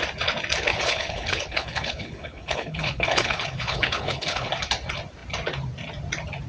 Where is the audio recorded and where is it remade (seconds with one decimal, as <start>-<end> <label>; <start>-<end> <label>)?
0.0-0.7 recorded; 0.7-4.5 remade; 4.5-6.5 recorded